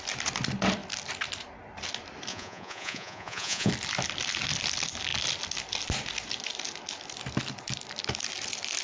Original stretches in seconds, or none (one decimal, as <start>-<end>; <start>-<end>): 0.0-2.3; 3.7-8.8